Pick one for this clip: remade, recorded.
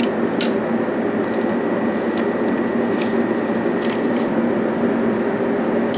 recorded